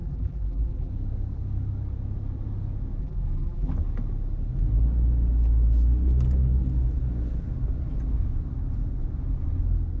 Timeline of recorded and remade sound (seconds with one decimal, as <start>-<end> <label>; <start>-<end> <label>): 0.0-0.9 remade; 0.9-3.0 recorded; 3.0-3.7 remade; 3.7-10.0 recorded